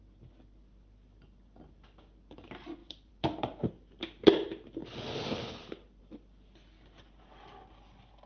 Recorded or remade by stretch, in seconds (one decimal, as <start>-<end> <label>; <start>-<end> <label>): 0.0-2.8 recorded; 2.8-3.7 remade; 3.7-8.3 recorded